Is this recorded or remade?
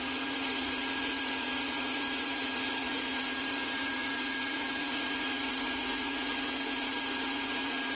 remade